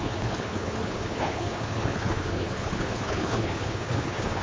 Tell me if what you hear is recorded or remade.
remade